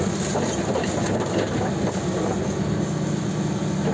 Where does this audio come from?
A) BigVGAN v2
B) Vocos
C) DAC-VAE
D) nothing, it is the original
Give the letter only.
D